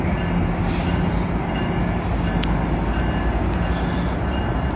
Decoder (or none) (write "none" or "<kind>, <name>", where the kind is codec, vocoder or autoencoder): none